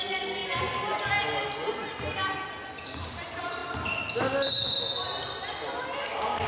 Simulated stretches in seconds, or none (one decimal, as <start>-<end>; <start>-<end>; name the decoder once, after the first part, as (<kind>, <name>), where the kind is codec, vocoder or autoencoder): 0.0-0.4 (vocoder, BigVGAN v2); 2.7-3.6